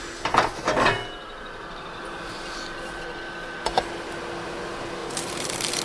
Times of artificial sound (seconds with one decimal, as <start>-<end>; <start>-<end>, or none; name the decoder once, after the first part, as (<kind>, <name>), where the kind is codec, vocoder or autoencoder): 5.0-5.8 (vocoder, BigVGAN v2)